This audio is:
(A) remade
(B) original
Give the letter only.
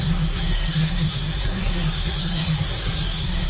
A